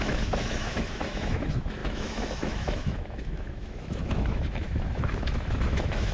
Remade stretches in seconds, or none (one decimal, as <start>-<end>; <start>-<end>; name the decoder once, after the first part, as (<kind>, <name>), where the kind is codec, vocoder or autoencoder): 0.0-6.1 (autoencoder, DAC-VAE)